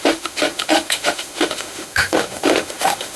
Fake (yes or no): yes